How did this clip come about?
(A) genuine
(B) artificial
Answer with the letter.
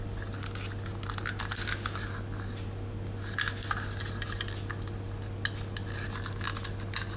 A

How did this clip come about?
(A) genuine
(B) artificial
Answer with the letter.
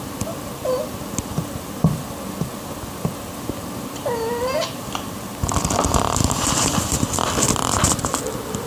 A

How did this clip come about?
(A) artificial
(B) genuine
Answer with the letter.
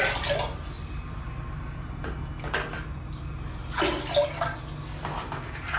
B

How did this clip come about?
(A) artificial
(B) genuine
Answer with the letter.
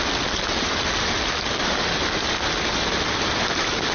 B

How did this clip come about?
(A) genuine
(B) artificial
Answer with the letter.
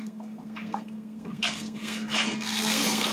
B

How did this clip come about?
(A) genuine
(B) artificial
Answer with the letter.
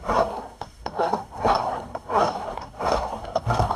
B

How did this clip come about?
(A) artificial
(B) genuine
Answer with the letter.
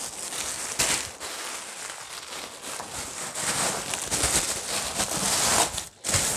B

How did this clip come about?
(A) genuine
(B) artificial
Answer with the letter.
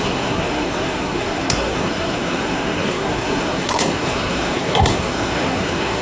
B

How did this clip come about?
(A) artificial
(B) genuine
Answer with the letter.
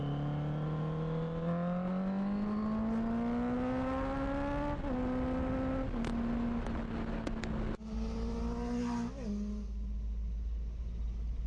B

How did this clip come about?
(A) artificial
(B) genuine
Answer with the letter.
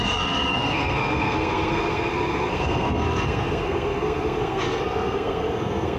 A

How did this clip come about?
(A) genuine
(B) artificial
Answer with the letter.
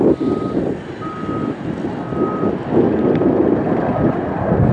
A